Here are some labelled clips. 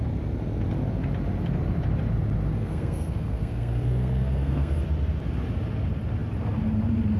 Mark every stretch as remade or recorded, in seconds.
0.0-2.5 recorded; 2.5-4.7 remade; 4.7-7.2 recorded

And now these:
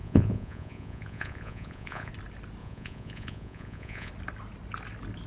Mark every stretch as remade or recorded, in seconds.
0.0-2.1 remade; 2.1-2.6 recorded; 2.6-4.1 remade; 4.1-5.3 recorded

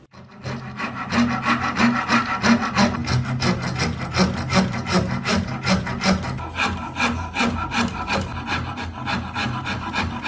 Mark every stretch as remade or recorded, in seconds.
0.0-10.3 recorded

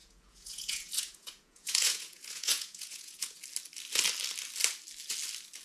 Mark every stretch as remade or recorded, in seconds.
0.0-3.4 remade; 3.4-5.6 recorded

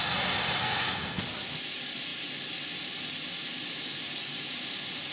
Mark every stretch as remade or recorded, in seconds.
0.0-0.6 recorded; 0.6-1.2 remade; 1.2-5.1 recorded

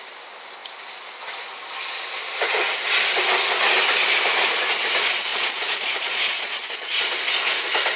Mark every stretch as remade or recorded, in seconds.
0.0-5.3 recorded; 5.3-7.0 remade; 7.0-8.0 recorded